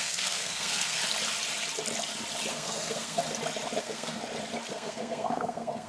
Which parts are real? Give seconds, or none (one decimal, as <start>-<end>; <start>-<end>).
1.0-2.5; 3.2-3.8; 4.2-4.7